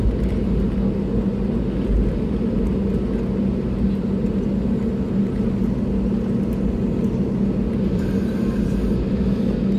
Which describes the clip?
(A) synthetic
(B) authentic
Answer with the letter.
B